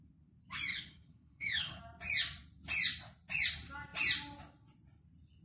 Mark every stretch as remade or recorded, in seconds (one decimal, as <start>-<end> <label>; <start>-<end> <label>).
0.0-0.7 recorded; 0.7-1.8 remade; 1.8-5.4 recorded